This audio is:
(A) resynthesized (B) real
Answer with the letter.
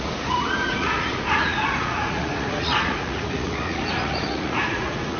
A